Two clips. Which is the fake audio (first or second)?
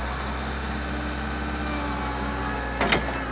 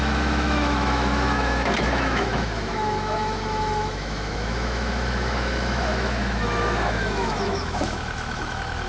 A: second